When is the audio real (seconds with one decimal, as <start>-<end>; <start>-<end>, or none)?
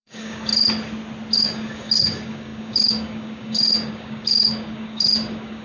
0.5-1.4